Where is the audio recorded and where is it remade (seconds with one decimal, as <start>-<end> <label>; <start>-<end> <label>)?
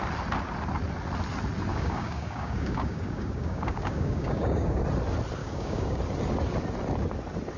0.0-1.7 recorded; 1.7-4.8 remade; 4.8-5.4 recorded; 5.4-6.0 remade; 6.0-7.6 recorded